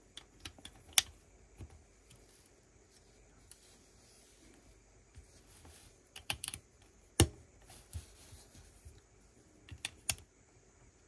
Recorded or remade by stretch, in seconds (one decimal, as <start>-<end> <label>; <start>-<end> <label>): 0.0-5.8 recorded; 5.8-7.1 remade; 7.1-11.1 recorded